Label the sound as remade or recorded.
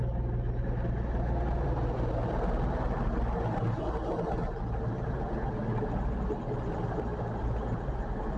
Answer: recorded